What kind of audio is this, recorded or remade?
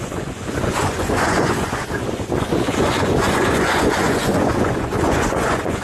remade